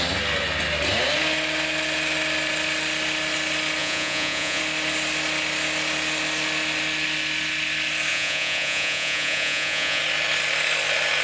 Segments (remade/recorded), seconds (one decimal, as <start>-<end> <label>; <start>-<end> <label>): 0.0-3.8 recorded; 3.8-4.6 remade; 4.6-8.1 recorded; 8.1-10.0 remade; 10.0-11.2 recorded